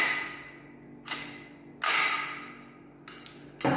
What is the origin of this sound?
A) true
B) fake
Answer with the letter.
A